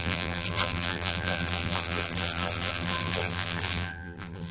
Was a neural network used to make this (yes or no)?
yes